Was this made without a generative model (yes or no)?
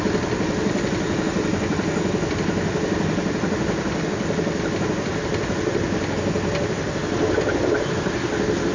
yes